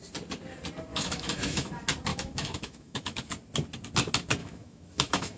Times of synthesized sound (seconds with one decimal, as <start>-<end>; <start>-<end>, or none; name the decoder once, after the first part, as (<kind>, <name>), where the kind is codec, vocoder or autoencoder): 0.9-1.7 (autoencoder, DAC-VAE); 2.1-3.3; 4.4-5.4